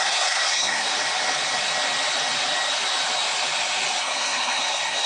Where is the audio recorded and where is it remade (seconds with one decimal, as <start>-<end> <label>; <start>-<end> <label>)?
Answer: 0.0-0.9 remade; 0.9-4.0 recorded; 4.0-5.1 remade

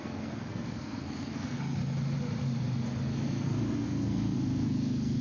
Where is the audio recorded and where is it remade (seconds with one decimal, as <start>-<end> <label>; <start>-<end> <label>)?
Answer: 0.0-1.8 remade; 1.8-3.1 recorded; 3.1-5.2 remade